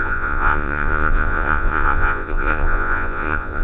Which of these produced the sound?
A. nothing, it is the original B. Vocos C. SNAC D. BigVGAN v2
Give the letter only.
B